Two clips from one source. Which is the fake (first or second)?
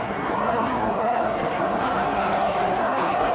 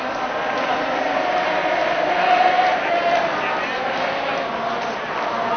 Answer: first